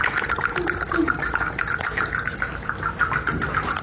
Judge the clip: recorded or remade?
recorded